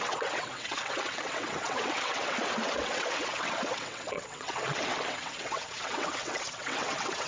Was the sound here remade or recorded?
remade